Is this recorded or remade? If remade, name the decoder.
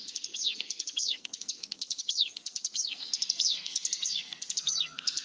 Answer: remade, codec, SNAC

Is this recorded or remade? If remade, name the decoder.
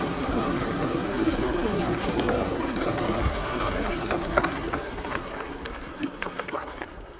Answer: remade, codec, SNAC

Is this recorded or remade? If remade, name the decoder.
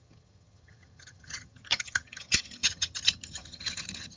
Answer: remade, vocoder, HiFi-GAN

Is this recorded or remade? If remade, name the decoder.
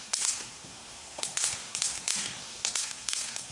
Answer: remade, codec, SNAC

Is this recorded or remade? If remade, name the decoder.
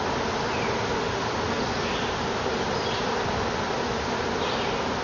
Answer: recorded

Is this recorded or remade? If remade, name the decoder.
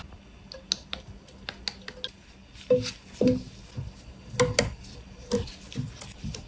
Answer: recorded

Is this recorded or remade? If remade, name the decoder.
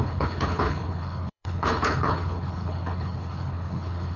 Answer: remade, codec, HILCodec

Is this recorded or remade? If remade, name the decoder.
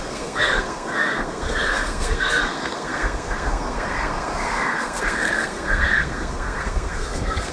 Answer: remade, codec, SNAC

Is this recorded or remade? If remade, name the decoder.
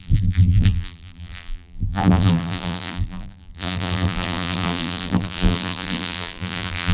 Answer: remade, vocoder, BigVGAN v2